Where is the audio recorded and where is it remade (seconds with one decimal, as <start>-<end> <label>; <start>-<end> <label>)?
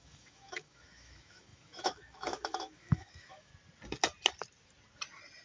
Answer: 0.0-3.5 remade; 3.5-5.4 recorded